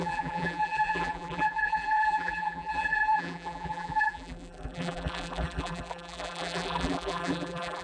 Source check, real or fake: fake